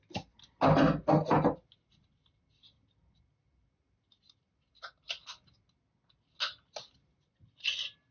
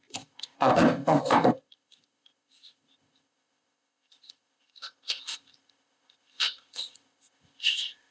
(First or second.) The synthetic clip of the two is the second